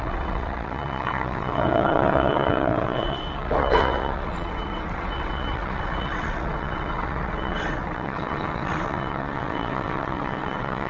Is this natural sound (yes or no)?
no